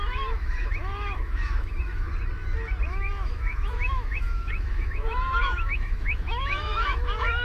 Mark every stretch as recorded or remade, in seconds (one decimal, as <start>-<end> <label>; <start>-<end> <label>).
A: 0.0-2.1 remade; 2.1-2.9 recorded; 2.9-7.4 remade